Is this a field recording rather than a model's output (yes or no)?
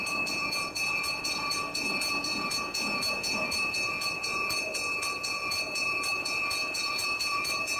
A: no